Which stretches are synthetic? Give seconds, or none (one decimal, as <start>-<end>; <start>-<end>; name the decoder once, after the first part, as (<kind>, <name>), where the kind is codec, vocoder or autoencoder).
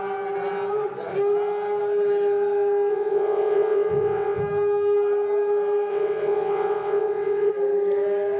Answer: 2.9-4.4 (vocoder, WaveNeXt); 5.9-7.5